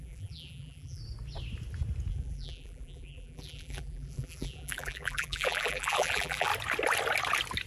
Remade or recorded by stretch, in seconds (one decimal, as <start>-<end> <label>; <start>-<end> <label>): 0.0-1.0 remade; 1.0-2.1 recorded; 2.1-6.5 remade; 6.5-7.7 recorded